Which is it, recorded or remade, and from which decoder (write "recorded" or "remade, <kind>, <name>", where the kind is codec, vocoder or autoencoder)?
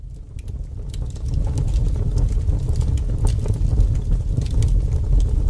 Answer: recorded